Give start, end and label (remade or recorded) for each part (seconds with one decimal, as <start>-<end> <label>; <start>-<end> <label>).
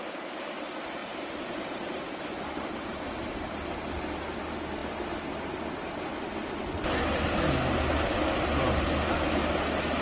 0.0-1.0 recorded; 1.0-3.5 remade; 3.5-10.0 recorded